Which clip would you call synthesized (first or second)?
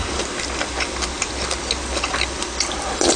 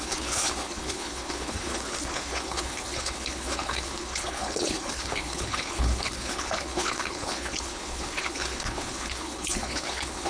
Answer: second